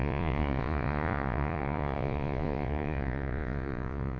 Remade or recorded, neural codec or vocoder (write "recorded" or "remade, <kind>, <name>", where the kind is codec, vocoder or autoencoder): remade, vocoder, Vocos